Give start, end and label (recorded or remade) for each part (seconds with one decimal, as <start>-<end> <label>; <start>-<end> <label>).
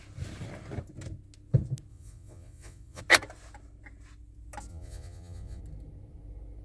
0.0-1.9 recorded; 1.9-3.0 remade; 3.0-4.7 recorded; 4.7-5.6 remade; 5.6-6.6 recorded